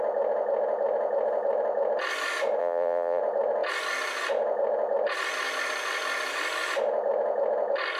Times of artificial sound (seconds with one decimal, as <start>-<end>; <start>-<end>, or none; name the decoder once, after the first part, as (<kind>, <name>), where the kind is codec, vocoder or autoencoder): 2.6-3.2 (vocoder, BigVGAN v2)